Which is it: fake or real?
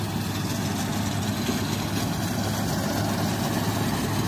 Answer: real